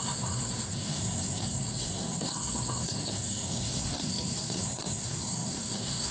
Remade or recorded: remade